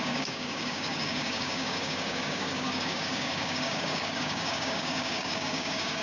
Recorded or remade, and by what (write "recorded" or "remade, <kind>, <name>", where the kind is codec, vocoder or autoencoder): remade, codec, DAC